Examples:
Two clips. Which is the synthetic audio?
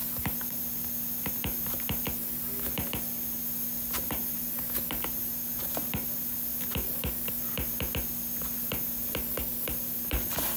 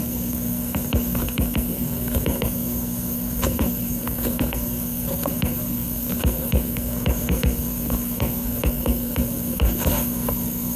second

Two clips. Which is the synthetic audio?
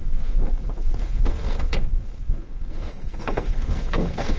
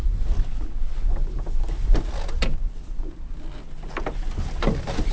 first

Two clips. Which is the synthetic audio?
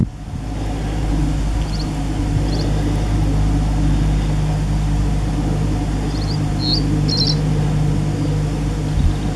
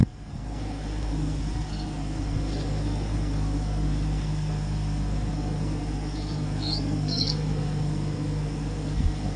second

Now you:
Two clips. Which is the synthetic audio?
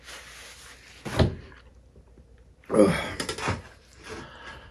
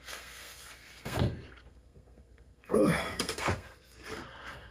second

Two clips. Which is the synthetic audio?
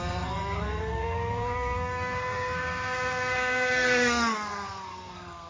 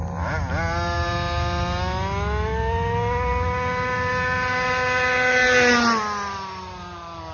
first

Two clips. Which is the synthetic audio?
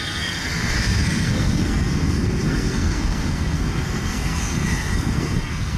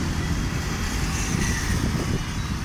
first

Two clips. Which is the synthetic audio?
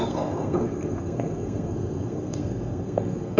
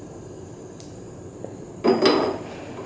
first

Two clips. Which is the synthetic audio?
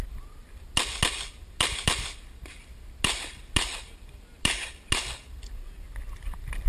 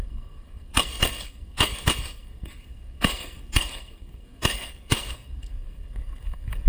second